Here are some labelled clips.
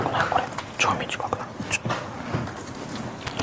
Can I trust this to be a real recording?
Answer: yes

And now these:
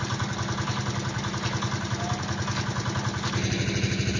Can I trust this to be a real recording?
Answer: yes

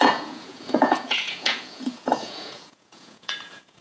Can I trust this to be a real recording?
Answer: no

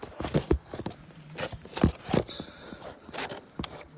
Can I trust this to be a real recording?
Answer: yes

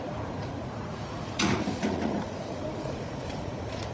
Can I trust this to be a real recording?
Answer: no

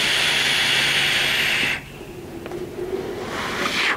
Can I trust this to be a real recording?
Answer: yes